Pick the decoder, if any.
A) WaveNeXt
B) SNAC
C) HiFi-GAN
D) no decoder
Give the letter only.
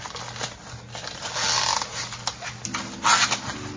D